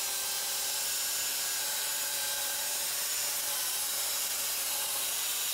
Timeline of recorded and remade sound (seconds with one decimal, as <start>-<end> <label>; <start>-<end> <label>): 0.0-1.9 recorded; 1.9-5.5 remade